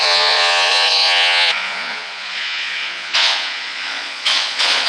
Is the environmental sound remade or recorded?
remade